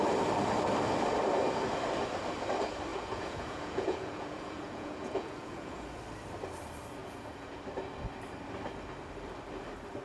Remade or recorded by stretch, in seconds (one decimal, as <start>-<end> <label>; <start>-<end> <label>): 0.0-2.9 recorded; 2.9-6.0 remade; 6.0-7.0 recorded; 7.0-7.6 remade; 7.6-10.0 recorded